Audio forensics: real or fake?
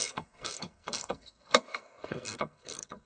fake